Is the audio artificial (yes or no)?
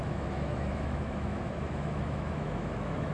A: yes